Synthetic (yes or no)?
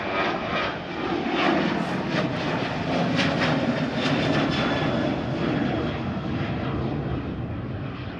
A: no